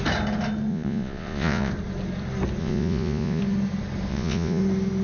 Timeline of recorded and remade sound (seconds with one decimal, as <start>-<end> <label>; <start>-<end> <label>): 0.0-0.7 recorded; 0.7-1.7 remade; 1.7-2.6 recorded; 2.6-3.4 remade; 3.4-4.1 recorded; 4.1-4.6 remade; 4.6-5.0 recorded